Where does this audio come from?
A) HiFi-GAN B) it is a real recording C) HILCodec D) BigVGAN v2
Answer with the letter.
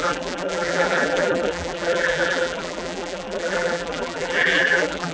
D